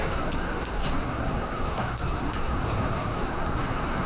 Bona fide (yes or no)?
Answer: no